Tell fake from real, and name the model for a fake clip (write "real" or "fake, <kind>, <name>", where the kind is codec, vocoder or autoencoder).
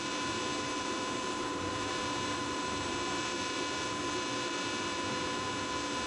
fake, vocoder, BigVGAN v2